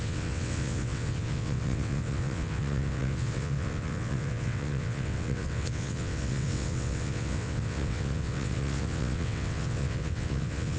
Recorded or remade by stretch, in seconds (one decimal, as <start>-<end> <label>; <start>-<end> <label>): 0.0-10.8 remade